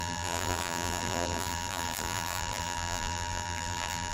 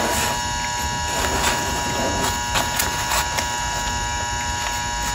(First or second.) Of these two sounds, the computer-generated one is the first